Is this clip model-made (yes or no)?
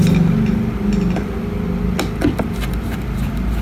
no